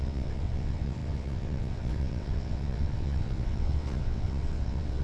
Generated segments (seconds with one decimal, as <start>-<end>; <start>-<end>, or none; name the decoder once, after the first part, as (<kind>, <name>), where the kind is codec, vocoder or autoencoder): 0.0-5.0 (vocoder, WaveNeXt)